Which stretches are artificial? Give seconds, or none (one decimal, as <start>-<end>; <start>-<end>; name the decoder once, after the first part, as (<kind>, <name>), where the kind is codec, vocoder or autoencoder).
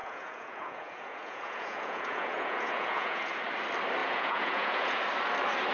0.0-3.4 (vocoder, Vocos); 4.0-5.0